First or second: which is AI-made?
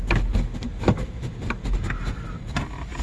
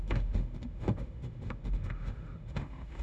second